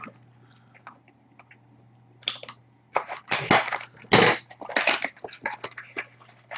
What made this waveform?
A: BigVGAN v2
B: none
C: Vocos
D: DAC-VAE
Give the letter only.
B